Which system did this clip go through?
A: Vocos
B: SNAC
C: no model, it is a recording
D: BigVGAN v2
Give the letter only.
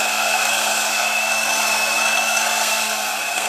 B